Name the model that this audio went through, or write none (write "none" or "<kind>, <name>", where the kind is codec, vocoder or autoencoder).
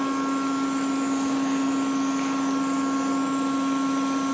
none